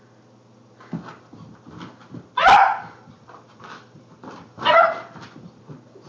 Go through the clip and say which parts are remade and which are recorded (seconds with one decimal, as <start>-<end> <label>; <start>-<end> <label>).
0.0-2.4 recorded; 2.4-5.5 remade; 5.5-6.1 recorded